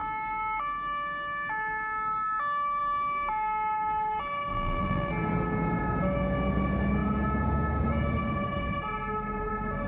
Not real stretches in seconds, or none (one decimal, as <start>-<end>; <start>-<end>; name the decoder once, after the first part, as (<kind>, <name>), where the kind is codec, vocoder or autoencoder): 4.5-5.1 (vocoder, BigVGAN v2)